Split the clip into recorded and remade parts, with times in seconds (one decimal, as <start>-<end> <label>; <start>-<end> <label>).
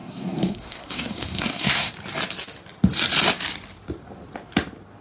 0.0-1.9 remade; 1.9-5.0 recorded